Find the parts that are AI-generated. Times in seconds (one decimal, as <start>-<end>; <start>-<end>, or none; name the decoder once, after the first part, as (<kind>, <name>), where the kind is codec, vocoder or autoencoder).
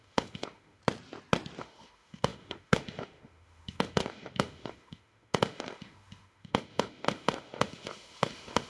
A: 0.0-0.8 (autoencoder, DAC-VAE); 1.6-8.7